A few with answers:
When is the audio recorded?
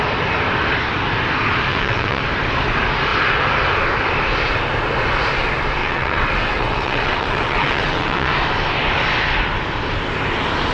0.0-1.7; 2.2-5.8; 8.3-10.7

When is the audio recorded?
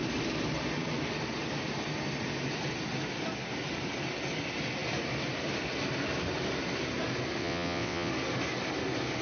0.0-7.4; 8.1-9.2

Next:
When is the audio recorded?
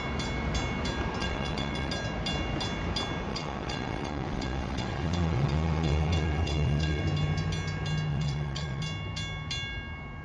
0.0-1.2; 1.9-3.3; 7.0-8.1; 8.8-10.2